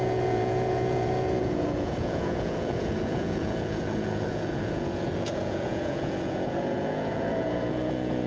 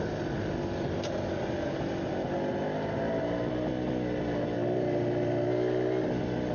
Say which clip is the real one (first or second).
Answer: second